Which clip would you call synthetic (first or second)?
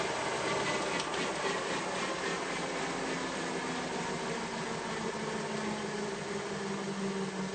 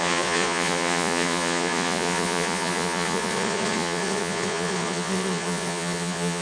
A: second